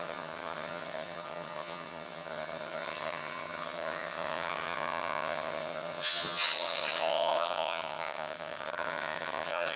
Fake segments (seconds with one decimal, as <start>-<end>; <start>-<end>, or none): 0.0-9.8